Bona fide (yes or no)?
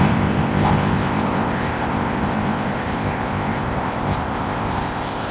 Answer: no